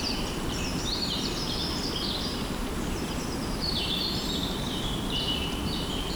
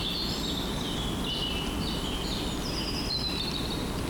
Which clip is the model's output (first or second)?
first